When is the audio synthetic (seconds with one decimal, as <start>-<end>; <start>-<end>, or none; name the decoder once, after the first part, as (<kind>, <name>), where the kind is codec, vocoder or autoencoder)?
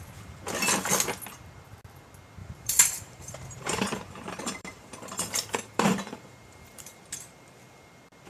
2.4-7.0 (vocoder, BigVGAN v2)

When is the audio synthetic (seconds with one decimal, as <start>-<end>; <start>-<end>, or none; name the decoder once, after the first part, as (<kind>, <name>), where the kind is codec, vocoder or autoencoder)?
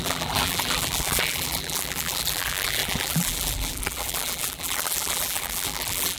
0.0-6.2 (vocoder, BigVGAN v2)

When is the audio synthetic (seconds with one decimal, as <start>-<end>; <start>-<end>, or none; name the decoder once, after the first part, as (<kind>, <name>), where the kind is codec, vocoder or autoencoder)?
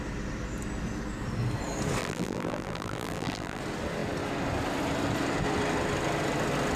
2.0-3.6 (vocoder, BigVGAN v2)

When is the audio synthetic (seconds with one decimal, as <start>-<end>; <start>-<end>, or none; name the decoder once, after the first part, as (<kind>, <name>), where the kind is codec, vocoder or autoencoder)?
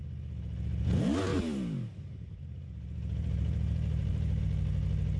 1.3-4.4 (vocoder, BigVGAN v2)